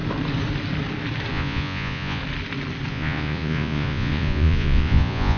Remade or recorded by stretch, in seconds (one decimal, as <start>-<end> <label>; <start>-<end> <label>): 0.0-1.3 recorded; 1.3-2.2 remade; 2.2-2.9 recorded; 2.9-5.4 remade